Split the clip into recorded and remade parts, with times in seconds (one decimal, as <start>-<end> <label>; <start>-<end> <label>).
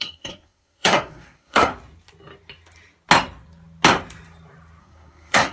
0.0-1.7 remade; 1.7-4.8 recorded; 4.8-5.5 remade